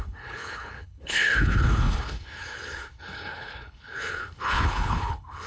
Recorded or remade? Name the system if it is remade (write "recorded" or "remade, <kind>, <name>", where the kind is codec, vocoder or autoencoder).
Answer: remade, codec, HILCodec